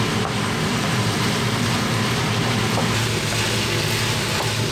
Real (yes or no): yes